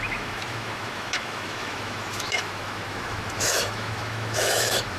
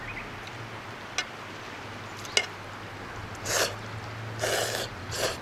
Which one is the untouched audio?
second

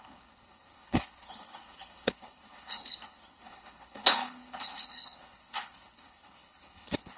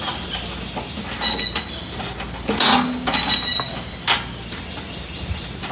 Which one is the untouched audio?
second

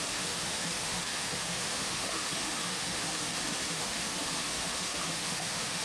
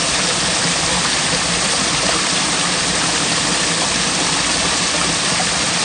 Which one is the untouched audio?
second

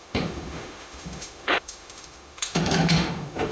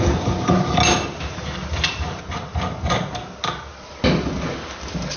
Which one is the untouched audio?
second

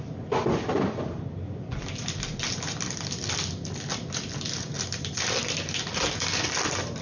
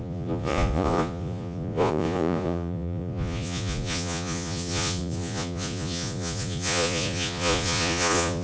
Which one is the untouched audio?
first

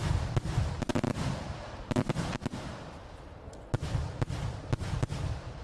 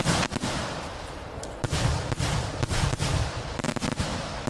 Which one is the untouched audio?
first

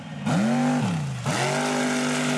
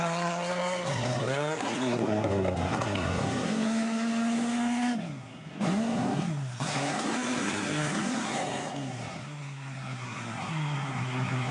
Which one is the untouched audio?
first